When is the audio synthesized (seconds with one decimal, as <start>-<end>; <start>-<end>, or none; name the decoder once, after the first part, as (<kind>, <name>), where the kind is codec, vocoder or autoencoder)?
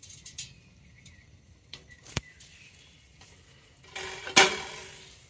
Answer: 0.0-3.2 (vocoder, BigVGAN v2)